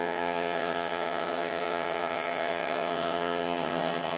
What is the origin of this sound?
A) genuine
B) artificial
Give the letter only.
B